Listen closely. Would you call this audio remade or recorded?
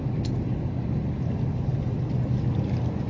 recorded